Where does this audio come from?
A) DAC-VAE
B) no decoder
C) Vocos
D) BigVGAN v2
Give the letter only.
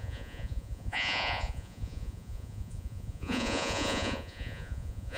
C